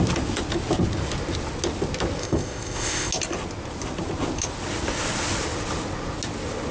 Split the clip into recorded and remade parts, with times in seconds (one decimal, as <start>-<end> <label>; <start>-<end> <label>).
0.0-2.2 recorded; 2.2-3.1 remade; 3.1-6.7 recorded